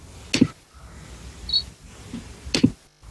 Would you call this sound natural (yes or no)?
yes